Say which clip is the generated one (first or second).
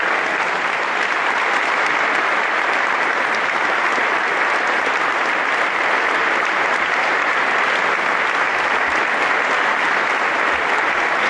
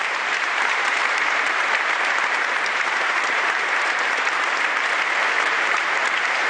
second